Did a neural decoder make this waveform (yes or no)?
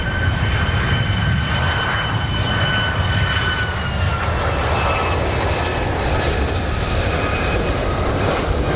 no